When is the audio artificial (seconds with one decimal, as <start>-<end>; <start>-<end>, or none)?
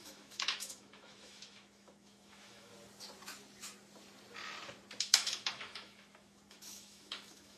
0.0-2.7; 5.0-7.6